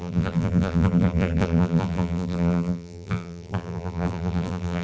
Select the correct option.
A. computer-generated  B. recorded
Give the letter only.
A